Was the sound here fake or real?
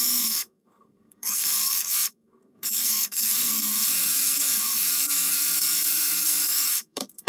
fake